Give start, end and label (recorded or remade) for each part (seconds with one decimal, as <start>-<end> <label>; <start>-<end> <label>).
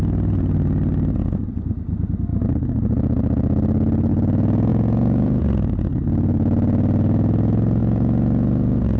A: 0.0-4.7 recorded; 4.7-5.4 remade; 5.4-7.8 recorded; 7.8-9.0 remade